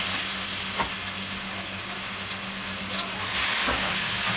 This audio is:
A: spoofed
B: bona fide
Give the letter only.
B